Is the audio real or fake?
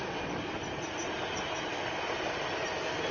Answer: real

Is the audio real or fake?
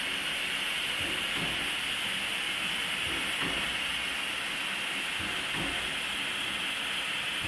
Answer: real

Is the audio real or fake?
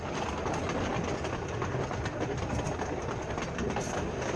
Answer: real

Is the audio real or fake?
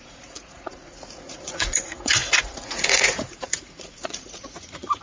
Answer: fake